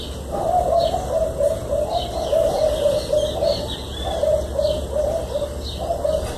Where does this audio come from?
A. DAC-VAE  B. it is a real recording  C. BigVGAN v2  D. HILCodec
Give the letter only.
B